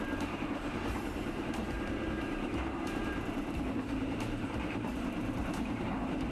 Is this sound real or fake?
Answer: fake